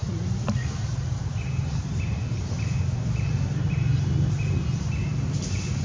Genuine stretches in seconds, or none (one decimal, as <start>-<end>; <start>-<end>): 0.0-5.8